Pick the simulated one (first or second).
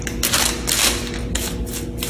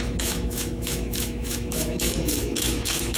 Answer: second